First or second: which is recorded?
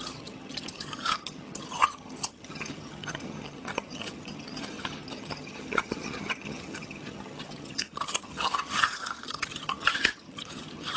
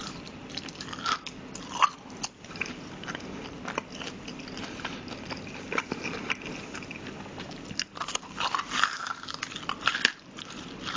second